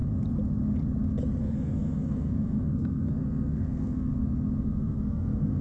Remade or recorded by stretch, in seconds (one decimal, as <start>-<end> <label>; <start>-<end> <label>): 0.0-1.4 recorded; 1.4-4.1 remade; 4.1-4.6 recorded; 4.6-5.6 remade